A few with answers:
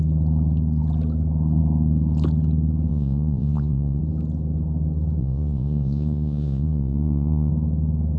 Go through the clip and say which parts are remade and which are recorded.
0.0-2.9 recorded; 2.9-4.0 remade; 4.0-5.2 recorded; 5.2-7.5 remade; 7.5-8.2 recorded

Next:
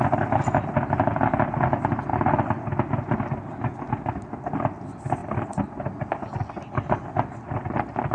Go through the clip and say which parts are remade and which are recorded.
0.0-8.1 recorded

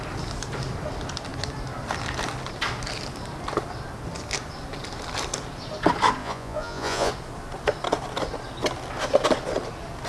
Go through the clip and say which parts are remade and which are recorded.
0.0-6.2 recorded; 6.2-7.1 remade; 7.1-10.1 recorded